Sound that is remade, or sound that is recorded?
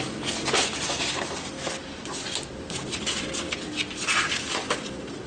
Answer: recorded